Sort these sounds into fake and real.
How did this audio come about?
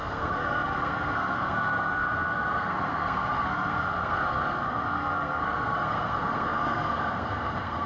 fake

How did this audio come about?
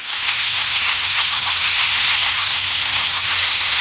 fake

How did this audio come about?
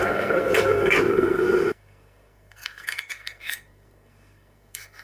fake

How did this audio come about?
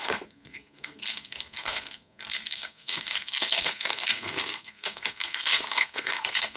fake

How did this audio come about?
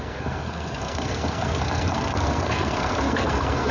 fake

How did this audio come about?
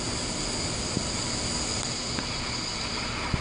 real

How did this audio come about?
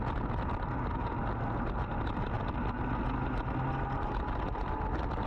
real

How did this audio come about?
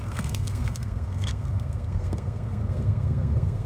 fake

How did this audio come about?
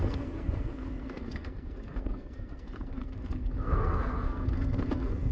fake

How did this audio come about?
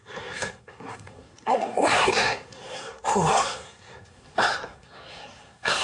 fake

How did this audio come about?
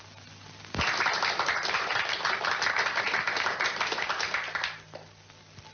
real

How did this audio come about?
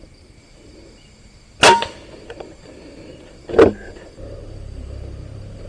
real